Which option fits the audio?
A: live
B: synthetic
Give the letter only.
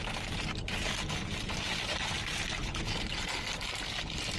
A